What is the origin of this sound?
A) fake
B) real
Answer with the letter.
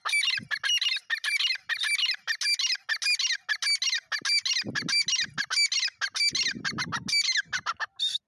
B